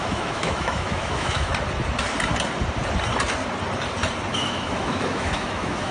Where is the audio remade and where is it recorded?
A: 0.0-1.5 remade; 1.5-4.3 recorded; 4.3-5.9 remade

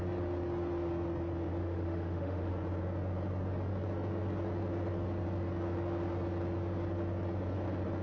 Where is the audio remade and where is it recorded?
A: 0.0-1.6 recorded; 1.6-2.5 remade; 2.5-8.0 recorded

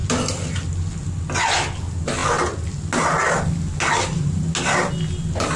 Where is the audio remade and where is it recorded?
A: 0.0-5.6 recorded

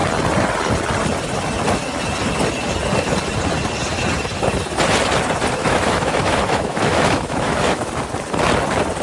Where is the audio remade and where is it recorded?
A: 0.0-5.6 recorded; 5.6-7.9 remade; 7.9-9.0 recorded

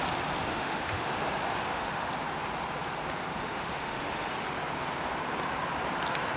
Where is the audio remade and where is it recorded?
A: 0.0-0.5 recorded; 0.5-1.1 remade; 1.1-1.6 recorded; 1.6-2.1 remade; 2.1-3.3 recorded; 3.3-4.3 remade; 4.3-6.4 recorded